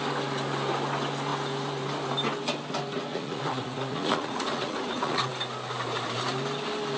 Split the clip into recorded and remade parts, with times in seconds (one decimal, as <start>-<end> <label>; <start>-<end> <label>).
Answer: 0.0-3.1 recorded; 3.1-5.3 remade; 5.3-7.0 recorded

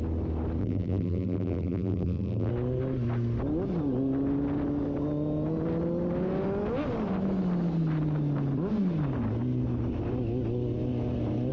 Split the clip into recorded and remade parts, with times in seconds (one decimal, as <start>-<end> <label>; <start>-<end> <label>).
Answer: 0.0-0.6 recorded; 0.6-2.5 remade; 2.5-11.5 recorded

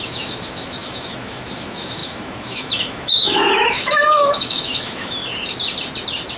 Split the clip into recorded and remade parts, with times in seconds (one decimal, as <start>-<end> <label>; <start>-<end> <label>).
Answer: 0.0-5.2 remade; 5.2-6.4 recorded

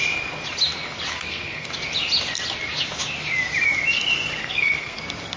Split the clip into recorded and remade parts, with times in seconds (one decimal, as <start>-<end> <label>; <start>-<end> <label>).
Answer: 0.0-1.1 recorded; 1.1-1.7 remade; 1.7-4.4 recorded; 4.4-5.0 remade; 5.0-5.4 recorded

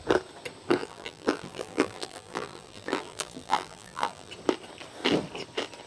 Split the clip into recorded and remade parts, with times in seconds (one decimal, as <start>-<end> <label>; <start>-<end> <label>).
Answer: 0.0-0.8 recorded; 0.8-4.3 remade; 4.3-5.9 recorded

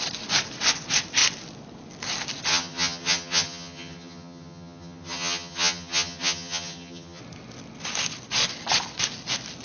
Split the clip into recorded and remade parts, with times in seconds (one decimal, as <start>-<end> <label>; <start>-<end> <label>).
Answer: 0.0-2.5 recorded; 2.5-7.2 remade; 7.2-9.6 recorded

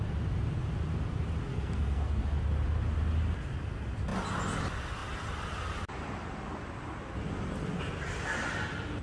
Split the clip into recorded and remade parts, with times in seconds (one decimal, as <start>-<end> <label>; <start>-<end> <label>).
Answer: 0.0-1.5 recorded; 1.5-2.2 remade; 2.2-9.0 recorded